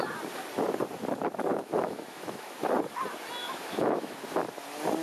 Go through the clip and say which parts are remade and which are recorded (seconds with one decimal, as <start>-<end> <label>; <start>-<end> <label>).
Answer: 0.0-1.5 recorded; 1.5-2.7 remade; 2.7-3.4 recorded; 3.4-4.1 remade; 4.1-5.0 recorded